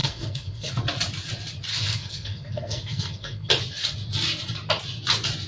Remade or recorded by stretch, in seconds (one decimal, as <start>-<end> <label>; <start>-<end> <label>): 0.0-0.7 remade; 0.7-1.7 recorded; 1.7-3.5 remade; 3.5-5.5 recorded